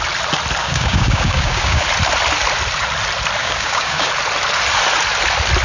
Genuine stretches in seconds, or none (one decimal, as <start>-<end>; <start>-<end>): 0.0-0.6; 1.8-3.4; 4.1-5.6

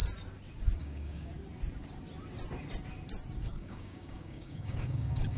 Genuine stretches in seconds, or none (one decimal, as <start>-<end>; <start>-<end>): 0.0-0.8; 1.3-3.4

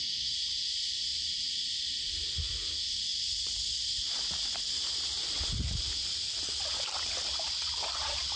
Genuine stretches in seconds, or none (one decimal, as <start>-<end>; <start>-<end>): 0.0-8.4

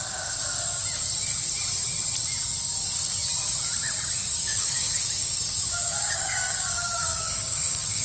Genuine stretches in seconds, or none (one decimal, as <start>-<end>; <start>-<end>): 0.4-4.4

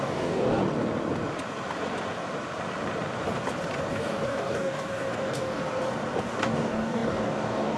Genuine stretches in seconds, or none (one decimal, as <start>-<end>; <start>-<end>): 0.6-3.9; 5.6-6.2

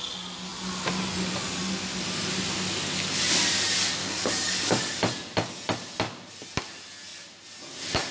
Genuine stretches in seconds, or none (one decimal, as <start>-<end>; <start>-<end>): 0.0-4.0; 5.0-8.1

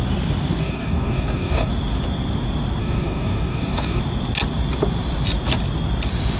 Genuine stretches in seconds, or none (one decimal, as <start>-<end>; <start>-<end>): 0.0-0.6; 1.7-2.8; 4.0-6.4

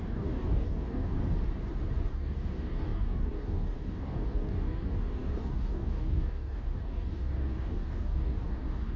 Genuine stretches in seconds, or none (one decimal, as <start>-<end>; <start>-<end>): 1.2-2.1